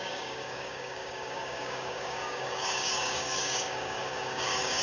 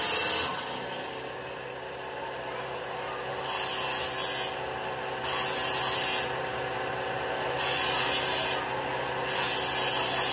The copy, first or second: first